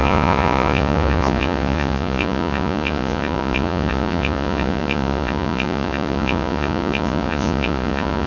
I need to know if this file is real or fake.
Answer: fake